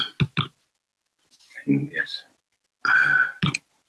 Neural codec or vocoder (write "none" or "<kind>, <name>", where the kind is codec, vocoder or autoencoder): none